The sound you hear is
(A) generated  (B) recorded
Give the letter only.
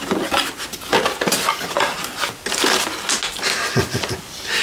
B